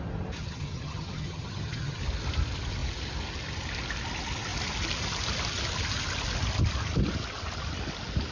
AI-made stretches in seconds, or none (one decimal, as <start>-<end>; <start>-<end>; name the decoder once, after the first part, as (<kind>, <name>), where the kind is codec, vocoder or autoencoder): 0.4-2.0 (vocoder, HiFi-GAN)